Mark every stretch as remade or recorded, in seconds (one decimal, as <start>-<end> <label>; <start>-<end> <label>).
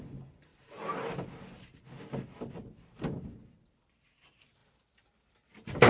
0.0-5.9 recorded